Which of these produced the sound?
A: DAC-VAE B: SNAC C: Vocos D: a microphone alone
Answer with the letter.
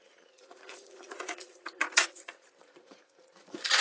C